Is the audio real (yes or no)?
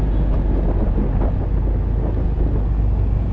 yes